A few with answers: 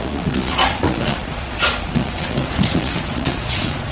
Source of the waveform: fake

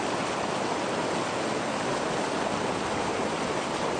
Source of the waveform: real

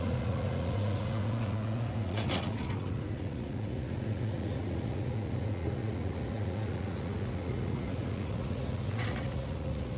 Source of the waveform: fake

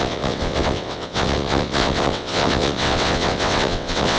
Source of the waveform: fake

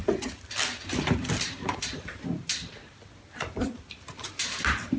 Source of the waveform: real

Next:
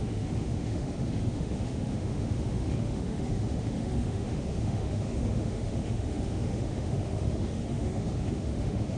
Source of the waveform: fake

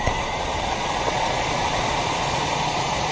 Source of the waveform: fake